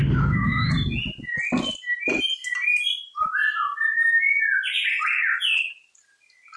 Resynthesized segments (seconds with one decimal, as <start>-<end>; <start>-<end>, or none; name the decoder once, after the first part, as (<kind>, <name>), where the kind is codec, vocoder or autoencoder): 0.0-0.7 (autoencoder, DAC-VAE)